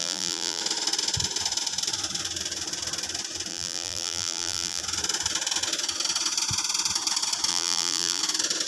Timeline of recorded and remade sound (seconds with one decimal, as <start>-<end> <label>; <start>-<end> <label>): 0.0-0.6 remade; 0.6-3.5 recorded; 3.5-4.8 remade; 4.8-7.5 recorded; 7.5-8.2 remade; 8.2-8.7 recorded